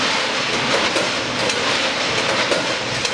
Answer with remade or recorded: recorded